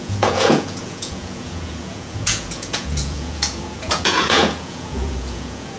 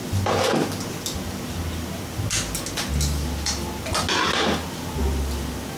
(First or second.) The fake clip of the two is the first